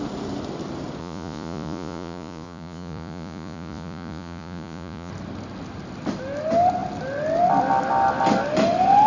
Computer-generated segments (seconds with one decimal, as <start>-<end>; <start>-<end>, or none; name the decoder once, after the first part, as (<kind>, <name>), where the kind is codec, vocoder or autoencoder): 1.0-5.1 (vocoder, Vocos)